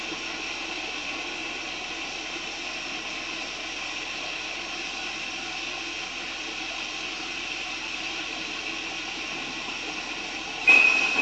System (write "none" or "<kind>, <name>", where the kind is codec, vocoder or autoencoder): none